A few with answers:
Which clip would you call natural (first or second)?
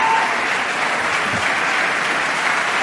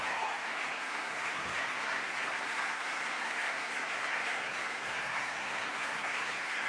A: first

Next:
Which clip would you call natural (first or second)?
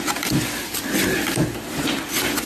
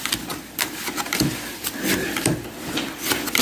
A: first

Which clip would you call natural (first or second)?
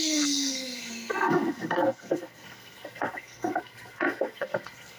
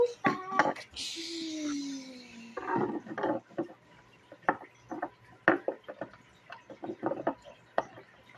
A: second